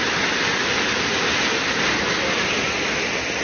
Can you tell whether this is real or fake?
real